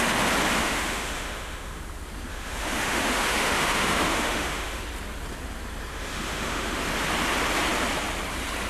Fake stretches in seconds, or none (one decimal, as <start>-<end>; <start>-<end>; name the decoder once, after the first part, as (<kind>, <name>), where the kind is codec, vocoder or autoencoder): 0.6-1.8 (autoencoder, DAC-VAE); 2.3-4.8; 5.9-6.8